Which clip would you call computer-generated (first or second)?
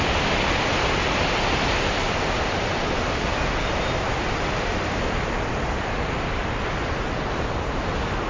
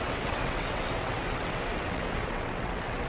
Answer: second